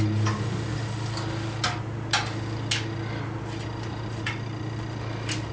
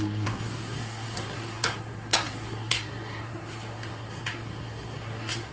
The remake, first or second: second